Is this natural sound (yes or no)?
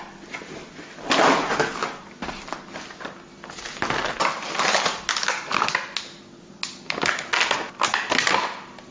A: yes